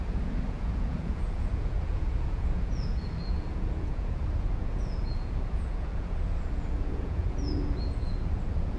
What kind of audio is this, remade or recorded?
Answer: remade